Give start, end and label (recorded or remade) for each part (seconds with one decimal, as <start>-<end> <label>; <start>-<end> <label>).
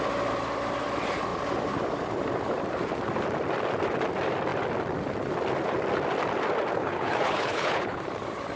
0.0-6.7 recorded; 6.7-8.0 remade; 8.0-8.6 recorded